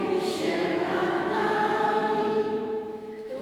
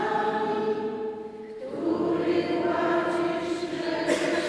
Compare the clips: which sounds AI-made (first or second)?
first